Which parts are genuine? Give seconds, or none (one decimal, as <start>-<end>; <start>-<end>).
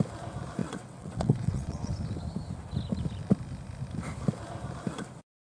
0.0-0.6; 1.9-5.5